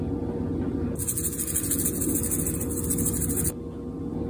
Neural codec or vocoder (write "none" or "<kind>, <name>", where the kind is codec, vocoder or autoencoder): none